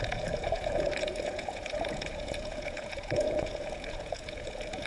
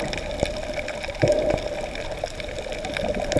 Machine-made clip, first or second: first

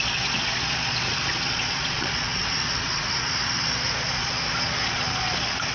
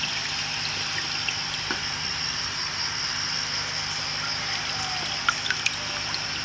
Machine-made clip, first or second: first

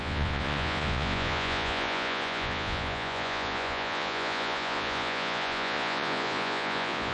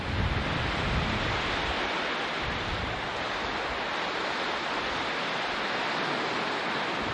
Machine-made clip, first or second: first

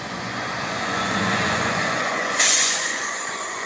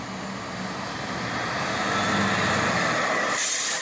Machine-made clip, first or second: first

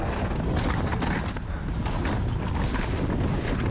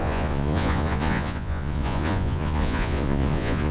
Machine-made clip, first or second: second